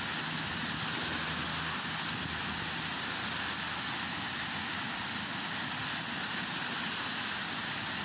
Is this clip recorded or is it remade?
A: recorded